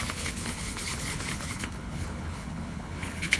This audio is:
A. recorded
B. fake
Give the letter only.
B